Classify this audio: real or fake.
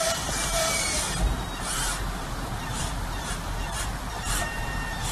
fake